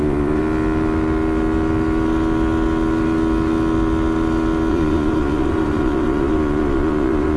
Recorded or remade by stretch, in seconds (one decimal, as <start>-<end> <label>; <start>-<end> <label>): 0.0-0.4 remade; 0.4-4.7 recorded; 4.7-7.4 remade